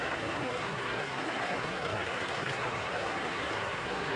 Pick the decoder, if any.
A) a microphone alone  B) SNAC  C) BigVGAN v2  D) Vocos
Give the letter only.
B